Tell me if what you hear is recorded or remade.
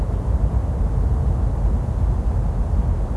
remade